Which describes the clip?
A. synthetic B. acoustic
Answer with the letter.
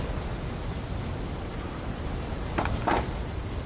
B